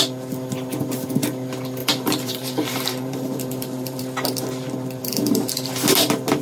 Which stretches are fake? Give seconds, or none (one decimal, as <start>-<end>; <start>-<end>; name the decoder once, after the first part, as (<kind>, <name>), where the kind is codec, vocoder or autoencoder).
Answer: 1.8-4.0 (vocoder, BigVGAN v2); 5.0-5.7